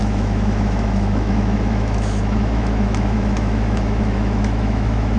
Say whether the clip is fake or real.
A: fake